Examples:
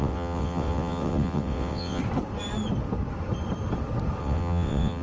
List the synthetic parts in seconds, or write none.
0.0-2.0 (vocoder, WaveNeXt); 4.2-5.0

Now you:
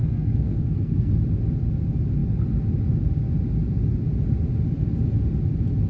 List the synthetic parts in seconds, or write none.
0.0-1.1 (codec, SNAC)

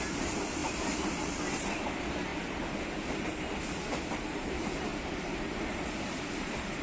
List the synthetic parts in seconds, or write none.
0.0-0.6 (vocoder, BigVGAN v2); 1.5-2.3; 3.6-4.9; 5.7-6.8

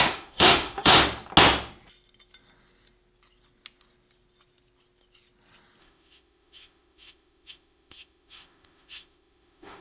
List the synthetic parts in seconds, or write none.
0.0-1.0 (autoencoder, DAC-VAE); 5.8-9.8